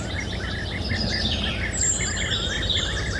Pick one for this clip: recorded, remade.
recorded